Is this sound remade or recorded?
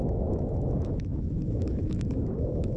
remade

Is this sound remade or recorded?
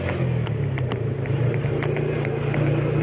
recorded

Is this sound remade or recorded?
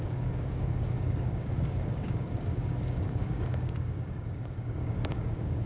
remade